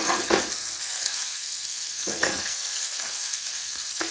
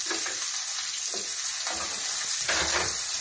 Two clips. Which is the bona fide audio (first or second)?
second